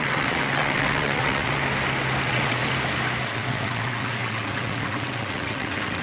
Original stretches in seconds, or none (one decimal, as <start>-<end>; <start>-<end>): 1.6-2.2; 2.6-3.2